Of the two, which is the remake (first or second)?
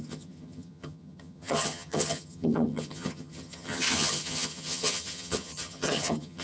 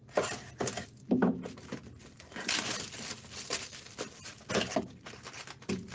first